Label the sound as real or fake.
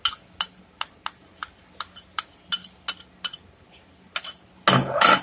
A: real